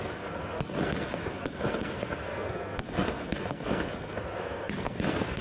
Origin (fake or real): fake